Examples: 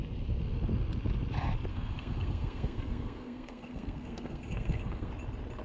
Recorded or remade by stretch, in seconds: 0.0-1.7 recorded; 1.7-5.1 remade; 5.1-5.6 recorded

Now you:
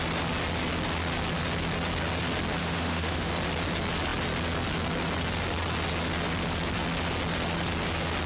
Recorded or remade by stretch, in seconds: 0.0-2.6 recorded; 2.6-3.3 remade; 3.3-8.3 recorded

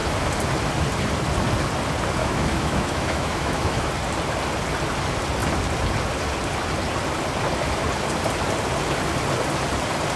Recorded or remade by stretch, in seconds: 0.0-2.2 recorded; 2.2-3.9 remade; 3.9-10.2 recorded

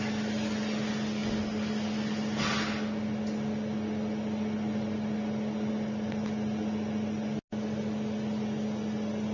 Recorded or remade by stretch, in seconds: 0.0-9.3 recorded

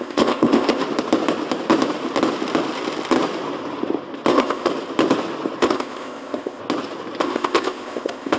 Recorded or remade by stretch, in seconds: 0.0-0.8 remade; 0.8-4.3 recorded; 4.3-4.7 remade; 4.7-5.6 recorded; 5.6-6.6 remade; 6.6-7.2 recorded; 7.2-8.4 remade